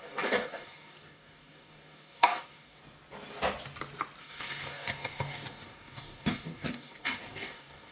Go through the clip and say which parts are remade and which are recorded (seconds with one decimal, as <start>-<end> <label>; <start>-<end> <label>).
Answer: 0.0-2.8 remade; 2.8-4.2 recorded; 4.2-7.9 remade